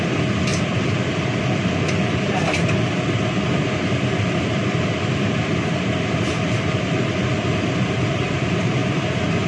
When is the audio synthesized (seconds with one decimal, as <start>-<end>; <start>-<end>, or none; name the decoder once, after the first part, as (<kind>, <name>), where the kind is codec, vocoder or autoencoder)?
0.0-8.8 (vocoder, BigVGAN v2)